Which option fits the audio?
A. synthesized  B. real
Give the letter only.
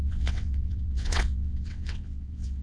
A